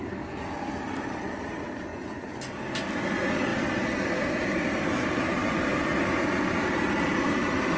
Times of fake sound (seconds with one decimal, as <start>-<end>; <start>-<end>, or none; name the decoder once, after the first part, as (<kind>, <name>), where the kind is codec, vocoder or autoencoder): 1.9-2.4 (vocoder, Vocos)

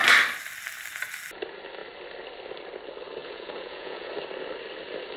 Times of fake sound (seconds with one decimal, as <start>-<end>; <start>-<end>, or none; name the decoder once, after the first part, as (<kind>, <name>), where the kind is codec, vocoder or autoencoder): 3.2-4.1 (vocoder, Vocos)

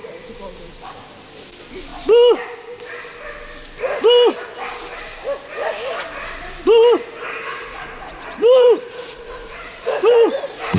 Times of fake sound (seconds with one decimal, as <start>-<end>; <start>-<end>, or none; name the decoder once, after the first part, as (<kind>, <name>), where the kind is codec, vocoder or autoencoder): 7.5-10.8 (vocoder, Vocos)

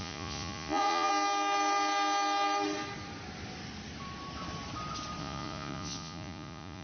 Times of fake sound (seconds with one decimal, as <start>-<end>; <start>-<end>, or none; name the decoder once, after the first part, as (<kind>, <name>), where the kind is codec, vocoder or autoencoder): 0.0-1.1 (vocoder, Vocos); 5.2-6.8